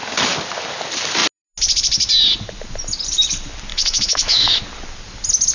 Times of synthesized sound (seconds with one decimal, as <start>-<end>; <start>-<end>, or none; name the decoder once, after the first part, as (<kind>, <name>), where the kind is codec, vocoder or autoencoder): 3.7-4.6 (autoencoder, DAC-VAE)